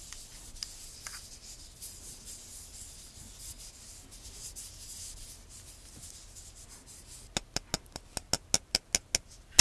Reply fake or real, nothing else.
real